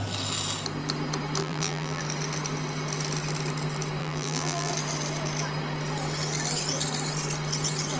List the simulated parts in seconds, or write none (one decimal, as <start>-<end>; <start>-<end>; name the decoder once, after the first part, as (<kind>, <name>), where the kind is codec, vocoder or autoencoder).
1.4-2.0 (vocoder, BigVGAN v2); 4.0-4.7